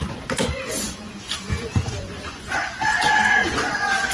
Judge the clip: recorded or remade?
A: remade